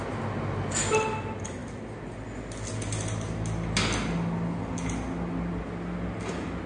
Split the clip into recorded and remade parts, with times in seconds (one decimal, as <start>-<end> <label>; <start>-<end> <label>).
0.0-6.7 recorded